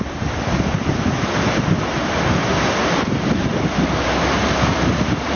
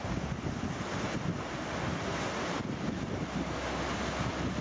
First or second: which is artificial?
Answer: first